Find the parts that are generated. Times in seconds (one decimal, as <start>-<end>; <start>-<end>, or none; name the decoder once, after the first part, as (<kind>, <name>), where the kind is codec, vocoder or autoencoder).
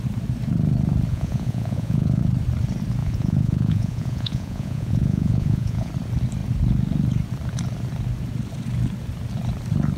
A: 1.1-2.2 (vocoder, Vocos); 3.0-5.9